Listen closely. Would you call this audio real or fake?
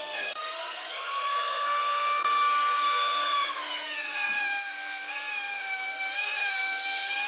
fake